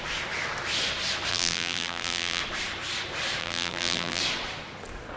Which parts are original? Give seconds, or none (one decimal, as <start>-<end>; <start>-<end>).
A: 0.0-1.3; 2.4-3.4; 4.2-5.2